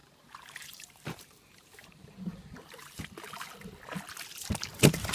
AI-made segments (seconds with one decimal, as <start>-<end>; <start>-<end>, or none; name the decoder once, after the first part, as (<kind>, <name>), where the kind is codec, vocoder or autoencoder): 0.0-3.1 (vocoder, BigVGAN v2)